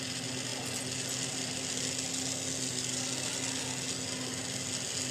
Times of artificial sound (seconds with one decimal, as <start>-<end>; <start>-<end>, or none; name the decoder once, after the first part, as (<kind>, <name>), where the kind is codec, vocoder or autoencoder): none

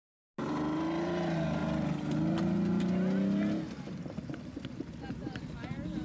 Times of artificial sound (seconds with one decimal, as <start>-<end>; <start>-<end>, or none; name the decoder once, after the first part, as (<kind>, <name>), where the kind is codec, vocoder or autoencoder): none

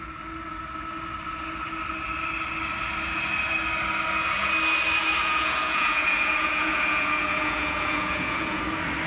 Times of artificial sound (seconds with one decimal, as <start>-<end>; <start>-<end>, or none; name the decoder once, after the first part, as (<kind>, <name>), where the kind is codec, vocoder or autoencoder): 5.2-8.6 (vocoder, Vocos)

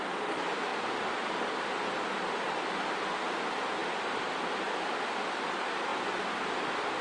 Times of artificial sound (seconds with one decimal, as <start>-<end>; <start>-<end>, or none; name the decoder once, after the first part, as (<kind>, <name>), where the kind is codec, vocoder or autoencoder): none

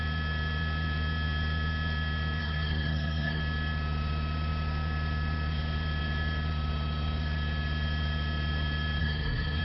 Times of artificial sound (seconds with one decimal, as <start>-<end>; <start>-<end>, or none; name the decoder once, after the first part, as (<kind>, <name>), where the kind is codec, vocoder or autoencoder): 2.4-3.4 (codec, SNAC); 9.0-9.6

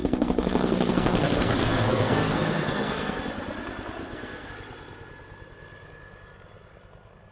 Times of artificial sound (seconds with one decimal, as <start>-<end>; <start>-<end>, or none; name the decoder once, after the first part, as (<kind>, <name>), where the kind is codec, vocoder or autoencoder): 0.0-3.2 (codec, SNAC); 4.0-4.5